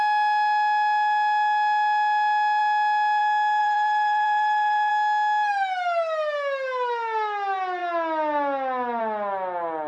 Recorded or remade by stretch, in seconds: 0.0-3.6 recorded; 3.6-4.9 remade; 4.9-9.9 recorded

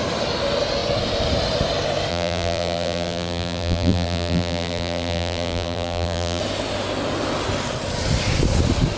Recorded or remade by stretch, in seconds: 0.0-2.1 recorded; 2.1-6.4 remade; 6.4-9.0 recorded

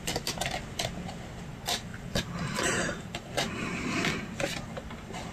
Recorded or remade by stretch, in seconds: 0.0-1.9 recorded; 1.9-3.3 remade; 3.3-5.3 recorded

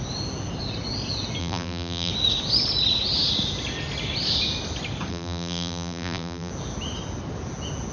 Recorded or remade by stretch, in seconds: 0.0-1.4 recorded; 1.4-2.1 remade; 2.1-5.1 recorded; 5.1-6.5 remade; 6.5-7.9 recorded